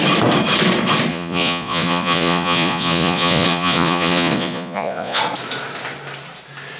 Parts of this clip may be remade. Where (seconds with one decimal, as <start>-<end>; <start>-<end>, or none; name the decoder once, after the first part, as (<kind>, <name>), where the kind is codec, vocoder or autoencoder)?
1.1-5.2 (vocoder, Vocos)